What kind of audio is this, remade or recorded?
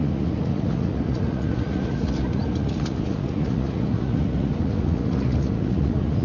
remade